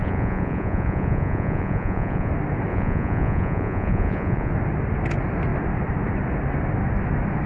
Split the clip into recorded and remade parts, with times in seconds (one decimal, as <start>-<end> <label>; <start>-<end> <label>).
0.0-2.3 remade; 2.3-2.7 recorded; 2.7-4.5 remade; 4.5-7.5 recorded